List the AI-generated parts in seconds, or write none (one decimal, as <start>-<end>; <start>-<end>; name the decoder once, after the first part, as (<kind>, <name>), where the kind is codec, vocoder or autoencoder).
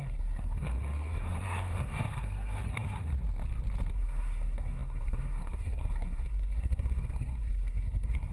0.0-3.1 (codec, SNAC); 3.9-8.3